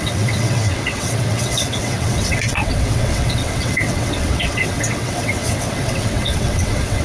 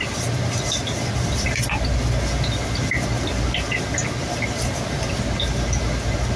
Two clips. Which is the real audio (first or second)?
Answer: second